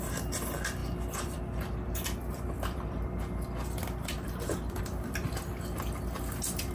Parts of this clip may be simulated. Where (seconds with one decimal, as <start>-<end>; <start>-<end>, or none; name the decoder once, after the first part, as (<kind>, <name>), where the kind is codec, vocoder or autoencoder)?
0.0-6.7 (vocoder, BigVGAN v2)